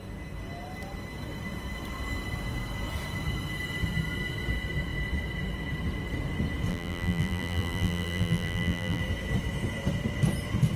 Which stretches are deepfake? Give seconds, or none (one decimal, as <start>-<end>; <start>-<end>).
6.7-9.0

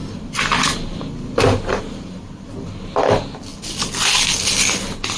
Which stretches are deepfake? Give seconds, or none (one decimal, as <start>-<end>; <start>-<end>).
0.0-3.1

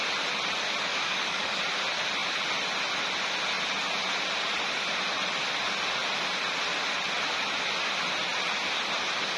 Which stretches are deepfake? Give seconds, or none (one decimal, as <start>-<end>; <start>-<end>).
0.9-1.6

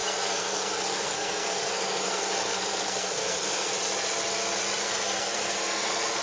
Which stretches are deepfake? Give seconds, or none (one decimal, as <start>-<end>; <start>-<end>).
0.0-3.7; 4.8-6.2

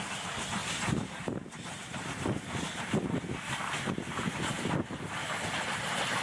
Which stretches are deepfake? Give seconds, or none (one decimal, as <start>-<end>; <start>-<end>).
0.6-3.6; 5.2-5.8